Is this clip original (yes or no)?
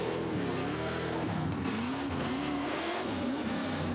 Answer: no